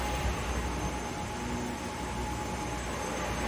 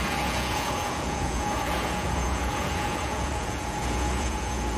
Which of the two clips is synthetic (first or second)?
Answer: second